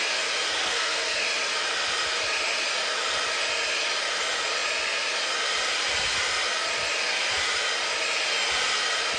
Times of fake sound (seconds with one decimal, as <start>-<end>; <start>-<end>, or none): 0.6-1.2